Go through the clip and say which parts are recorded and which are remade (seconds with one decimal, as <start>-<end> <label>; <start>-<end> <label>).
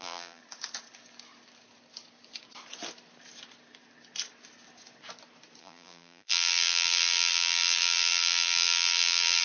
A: 0.0-0.4 remade; 0.4-5.6 recorded; 5.6-9.4 remade